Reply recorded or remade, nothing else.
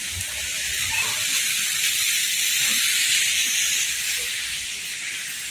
recorded